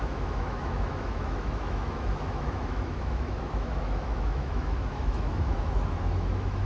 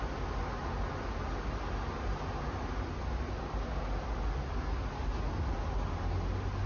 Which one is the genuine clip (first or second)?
second